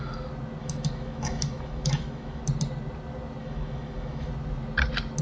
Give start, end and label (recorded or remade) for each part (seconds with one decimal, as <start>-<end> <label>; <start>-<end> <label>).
0.0-0.6 recorded; 0.6-2.4 remade; 2.4-3.4 recorded; 3.4-4.3 remade; 4.3-5.2 recorded